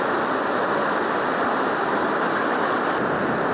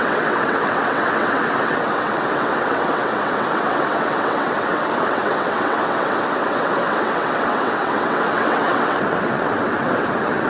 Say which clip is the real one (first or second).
first